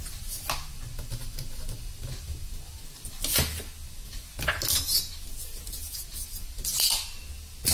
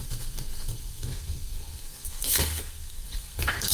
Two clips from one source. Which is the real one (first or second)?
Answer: first